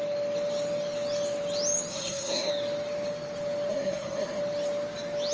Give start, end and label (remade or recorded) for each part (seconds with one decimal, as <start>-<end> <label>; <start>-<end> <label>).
0.0-1.9 recorded; 1.9-2.5 remade; 2.5-3.7 recorded; 3.7-4.4 remade; 4.4-5.3 recorded